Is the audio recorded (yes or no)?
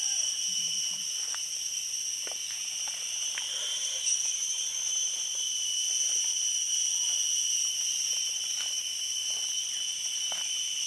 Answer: no